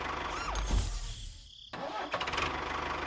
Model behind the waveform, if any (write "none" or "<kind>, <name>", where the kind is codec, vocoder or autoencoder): none